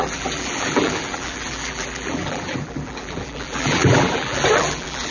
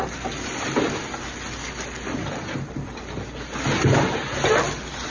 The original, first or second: second